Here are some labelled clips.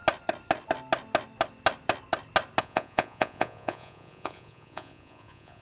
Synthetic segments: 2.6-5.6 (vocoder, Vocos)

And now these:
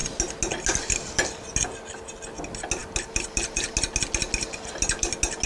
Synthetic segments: none

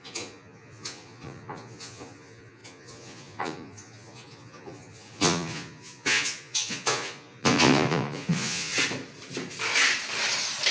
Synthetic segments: 0.0-8.7 (vocoder, Vocos)

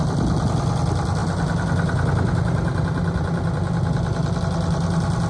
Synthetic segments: none

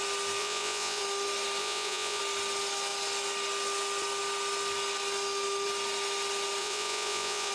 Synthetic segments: 0.4-1.0 (vocoder, Vocos); 1.6-2.2; 6.6-7.5

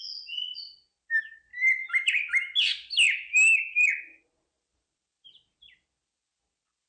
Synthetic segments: none

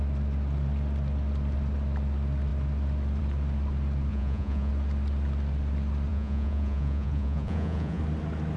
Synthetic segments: 4.1-4.7 (vocoder, Vocos); 6.1-8.0

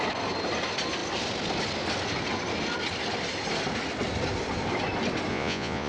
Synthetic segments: 5.3-5.9 (vocoder, Vocos)